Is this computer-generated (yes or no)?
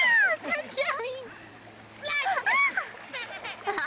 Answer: no